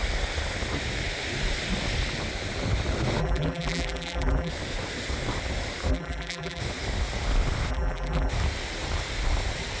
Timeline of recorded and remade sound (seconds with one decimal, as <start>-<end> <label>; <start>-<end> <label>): 0.0-3.2 recorded; 3.2-4.5 remade; 4.5-5.9 recorded; 5.9-6.6 remade; 6.6-7.7 recorded; 7.7-8.3 remade; 8.3-9.8 recorded